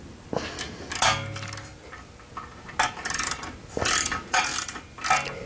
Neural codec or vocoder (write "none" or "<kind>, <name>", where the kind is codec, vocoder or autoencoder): none